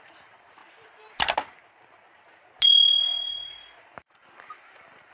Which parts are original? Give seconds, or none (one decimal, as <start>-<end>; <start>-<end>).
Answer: 0.6-3.7